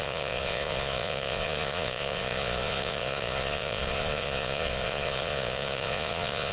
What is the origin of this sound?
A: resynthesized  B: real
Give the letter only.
A